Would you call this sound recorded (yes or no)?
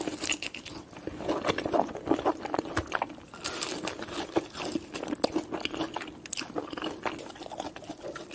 yes